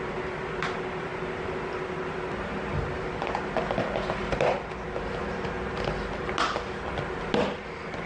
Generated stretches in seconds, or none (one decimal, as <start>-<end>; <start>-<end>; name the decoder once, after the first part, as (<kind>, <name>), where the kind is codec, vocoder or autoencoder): none